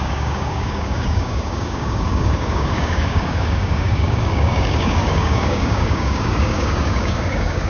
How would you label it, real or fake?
fake